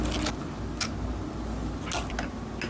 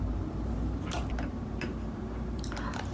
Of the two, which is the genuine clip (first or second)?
first